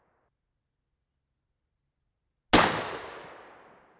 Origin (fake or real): real